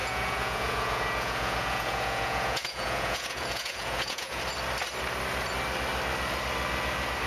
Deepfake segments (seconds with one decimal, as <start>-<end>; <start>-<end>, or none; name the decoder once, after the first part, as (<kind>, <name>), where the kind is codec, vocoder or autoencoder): 0.0-4.4 (vocoder, Vocos)